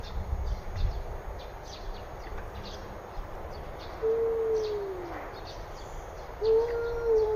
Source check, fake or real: real